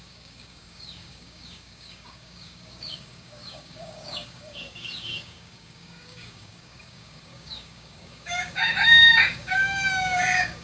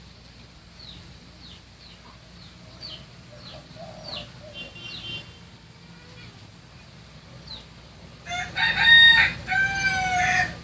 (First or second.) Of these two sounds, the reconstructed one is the first